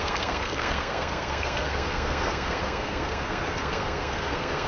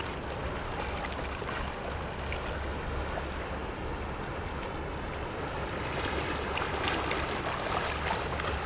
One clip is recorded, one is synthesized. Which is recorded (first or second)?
second